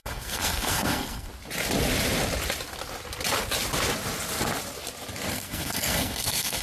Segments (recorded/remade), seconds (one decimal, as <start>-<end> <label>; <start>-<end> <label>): 0.0-1.3 remade; 1.3-5.3 recorded; 5.3-6.6 remade